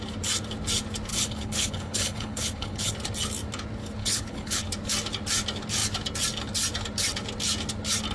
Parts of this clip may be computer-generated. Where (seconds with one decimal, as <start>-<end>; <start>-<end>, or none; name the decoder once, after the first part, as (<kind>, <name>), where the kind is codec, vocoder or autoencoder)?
1.1-2.9 (codec, HILCodec); 4.0-4.6